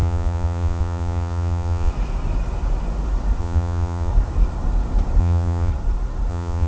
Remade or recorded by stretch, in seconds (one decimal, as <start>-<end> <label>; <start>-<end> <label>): 0.0-1.9 remade; 1.9-3.4 recorded; 3.4-4.1 remade; 4.1-5.2 recorded; 5.2-5.7 remade; 5.7-6.3 recorded; 6.3-6.7 remade